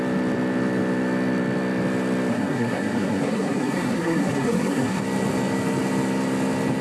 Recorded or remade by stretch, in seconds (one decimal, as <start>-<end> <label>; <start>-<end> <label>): 0.0-2.3 recorded; 2.3-5.0 remade; 5.0-6.8 recorded